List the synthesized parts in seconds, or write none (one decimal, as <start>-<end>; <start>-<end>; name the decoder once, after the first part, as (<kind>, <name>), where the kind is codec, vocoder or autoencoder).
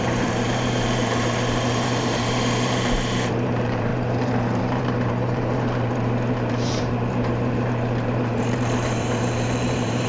0.0-10.1 (vocoder, BigVGAN v2)